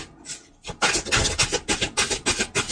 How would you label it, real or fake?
real